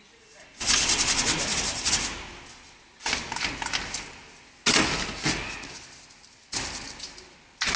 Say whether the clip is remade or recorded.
recorded